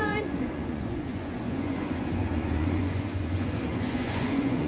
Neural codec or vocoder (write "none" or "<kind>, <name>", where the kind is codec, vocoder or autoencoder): vocoder, Vocos